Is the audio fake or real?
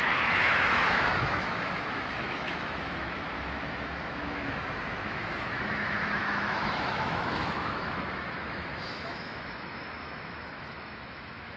fake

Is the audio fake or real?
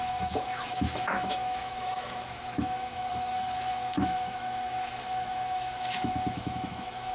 fake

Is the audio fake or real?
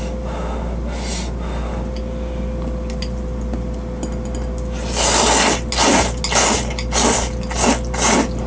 real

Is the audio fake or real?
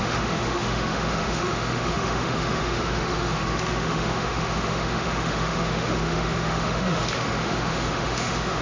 fake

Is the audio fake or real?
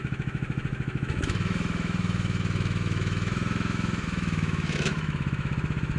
fake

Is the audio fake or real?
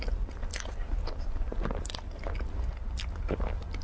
real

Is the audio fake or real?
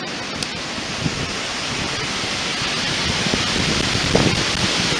real